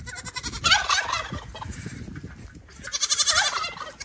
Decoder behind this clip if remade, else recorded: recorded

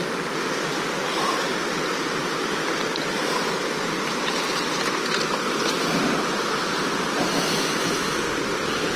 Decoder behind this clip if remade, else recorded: recorded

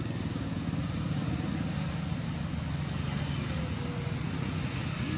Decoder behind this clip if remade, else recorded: recorded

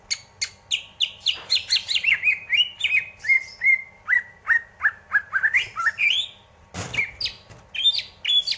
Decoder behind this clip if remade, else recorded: recorded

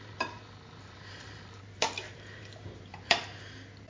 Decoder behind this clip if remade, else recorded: remade, vocoder, BigVGAN v2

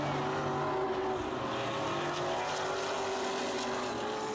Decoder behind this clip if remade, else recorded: recorded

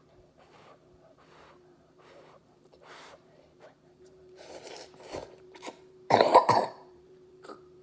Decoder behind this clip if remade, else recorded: remade, vocoder, BigVGAN v2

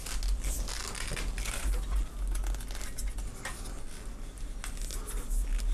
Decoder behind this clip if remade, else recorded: recorded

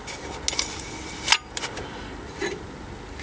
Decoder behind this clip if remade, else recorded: recorded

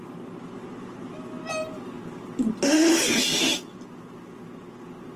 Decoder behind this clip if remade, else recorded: recorded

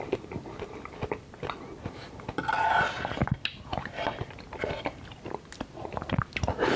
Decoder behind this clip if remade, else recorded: recorded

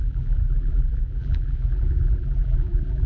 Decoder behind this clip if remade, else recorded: remade, vocoder, BigVGAN v2